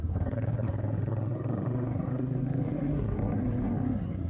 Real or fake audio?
fake